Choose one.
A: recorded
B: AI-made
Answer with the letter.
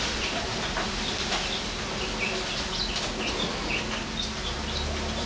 A